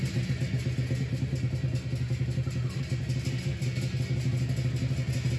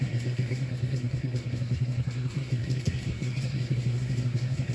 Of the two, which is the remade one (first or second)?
second